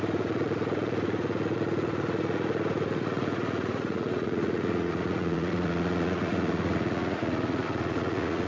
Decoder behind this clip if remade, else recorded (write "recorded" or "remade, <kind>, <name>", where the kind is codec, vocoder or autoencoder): remade, vocoder, Vocos